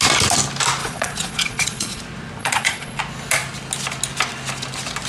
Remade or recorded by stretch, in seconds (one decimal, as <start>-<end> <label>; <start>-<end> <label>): 0.0-0.8 recorded; 0.8-2.0 remade; 2.0-2.4 recorded; 2.4-3.0 remade; 3.0-5.1 recorded